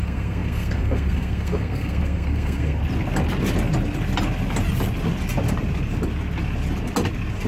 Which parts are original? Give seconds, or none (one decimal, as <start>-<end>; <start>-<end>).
2.8-7.5